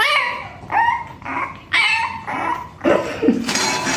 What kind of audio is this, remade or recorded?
recorded